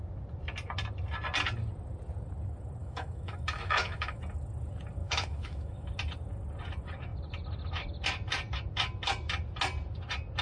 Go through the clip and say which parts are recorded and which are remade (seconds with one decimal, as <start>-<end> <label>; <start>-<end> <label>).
0.0-2.8 recorded; 2.8-4.2 remade; 4.2-5.0 recorded; 5.0-5.9 remade; 5.9-10.4 recorded